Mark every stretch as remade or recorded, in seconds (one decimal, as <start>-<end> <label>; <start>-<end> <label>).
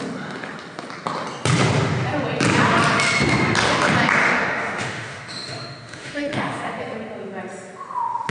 0.0-4.2 recorded; 4.2-6.8 remade; 6.8-8.3 recorded